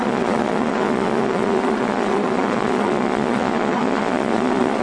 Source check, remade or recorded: remade